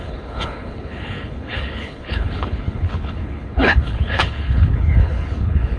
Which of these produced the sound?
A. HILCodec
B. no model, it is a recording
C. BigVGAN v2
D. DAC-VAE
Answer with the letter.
A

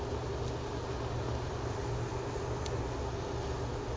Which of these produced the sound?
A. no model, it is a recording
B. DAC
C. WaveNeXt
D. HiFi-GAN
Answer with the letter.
A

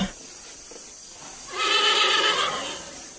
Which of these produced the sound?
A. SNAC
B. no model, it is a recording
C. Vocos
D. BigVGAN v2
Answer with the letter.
B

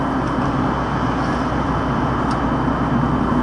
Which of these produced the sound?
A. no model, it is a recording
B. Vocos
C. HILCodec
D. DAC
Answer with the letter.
A